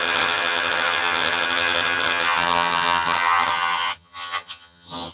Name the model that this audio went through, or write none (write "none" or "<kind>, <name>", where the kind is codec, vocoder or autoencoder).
vocoder, HiFi-GAN